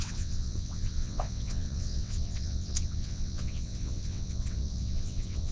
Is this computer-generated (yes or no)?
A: yes